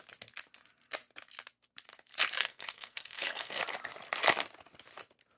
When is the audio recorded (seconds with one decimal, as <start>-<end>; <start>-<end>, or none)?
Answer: 0.0-2.4; 3.6-5.4